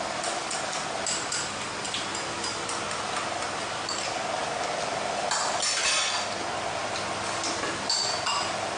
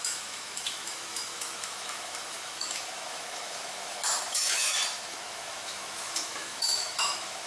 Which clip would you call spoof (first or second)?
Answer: second